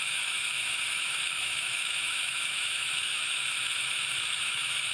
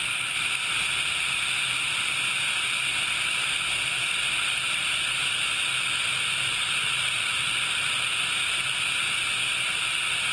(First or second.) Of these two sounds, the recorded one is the second